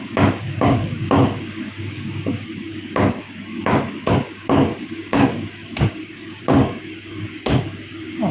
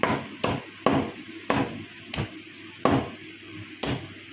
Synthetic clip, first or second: first